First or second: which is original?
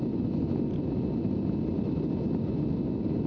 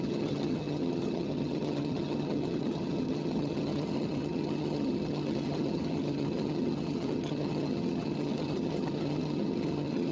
first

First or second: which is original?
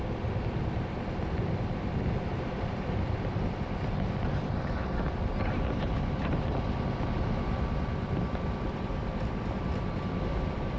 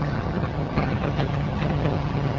first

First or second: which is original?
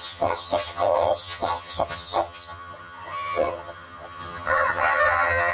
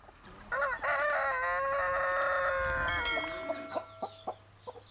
second